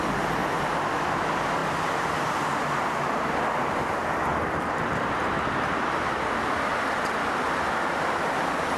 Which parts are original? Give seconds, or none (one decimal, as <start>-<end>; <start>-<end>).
0.0-0.4; 1.2-1.6; 3.4-4.3; 5.1-8.8